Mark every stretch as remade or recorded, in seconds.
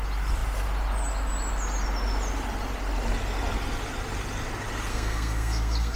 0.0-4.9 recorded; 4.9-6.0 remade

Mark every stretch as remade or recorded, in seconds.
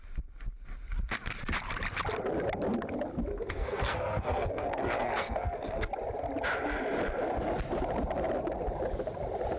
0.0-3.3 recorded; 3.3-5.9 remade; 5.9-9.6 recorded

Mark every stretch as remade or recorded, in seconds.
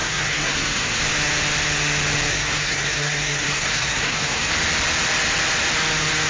0.0-1.0 remade; 1.0-2.3 recorded; 2.3-4.5 remade; 4.5-6.3 recorded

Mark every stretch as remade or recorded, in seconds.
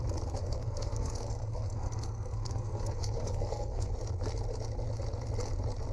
0.0-0.4 recorded; 0.4-3.9 remade; 3.9-5.9 recorded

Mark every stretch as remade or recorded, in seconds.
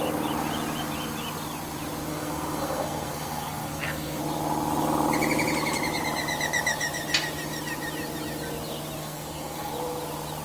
0.0-2.1 recorded; 2.1-4.2 remade; 4.2-9.0 recorded; 9.0-9.7 remade; 9.7-10.4 recorded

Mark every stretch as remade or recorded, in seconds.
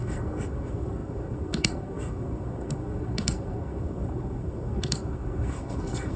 0.0-6.2 remade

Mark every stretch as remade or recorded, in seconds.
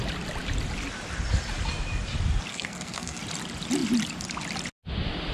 0.0-2.5 recorded; 2.5-3.2 remade; 3.2-5.3 recorded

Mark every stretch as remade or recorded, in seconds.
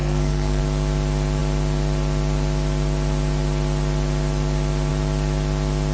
0.0-0.6 remade; 0.6-5.9 recorded